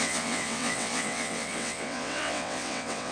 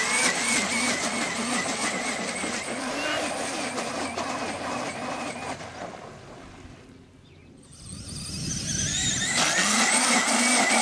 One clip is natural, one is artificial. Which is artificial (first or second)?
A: first